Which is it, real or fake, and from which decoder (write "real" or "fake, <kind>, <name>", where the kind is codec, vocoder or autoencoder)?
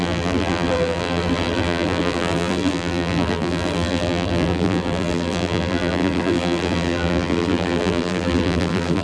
fake, vocoder, BigVGAN v2